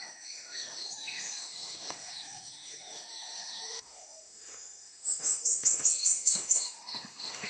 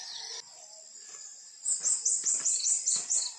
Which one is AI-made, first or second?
first